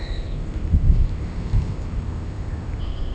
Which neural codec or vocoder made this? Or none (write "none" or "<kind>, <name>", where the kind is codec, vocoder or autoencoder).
codec, ZipCodec